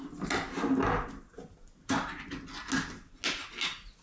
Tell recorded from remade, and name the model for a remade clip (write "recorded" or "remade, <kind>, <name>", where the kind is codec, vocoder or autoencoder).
recorded